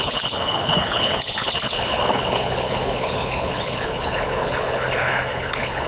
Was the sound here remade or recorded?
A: remade